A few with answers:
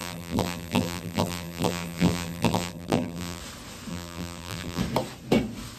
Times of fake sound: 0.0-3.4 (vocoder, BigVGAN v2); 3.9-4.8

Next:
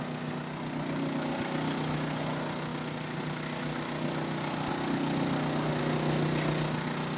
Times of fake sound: none